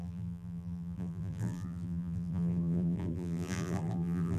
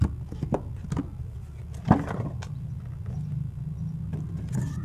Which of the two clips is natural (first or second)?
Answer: second